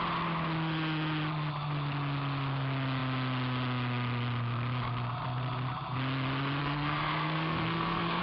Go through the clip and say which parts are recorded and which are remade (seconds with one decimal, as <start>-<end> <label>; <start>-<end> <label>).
0.0-6.6 recorded; 6.6-8.2 remade